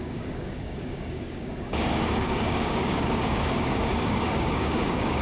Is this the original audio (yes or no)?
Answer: no